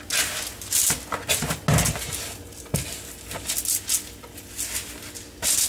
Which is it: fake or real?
real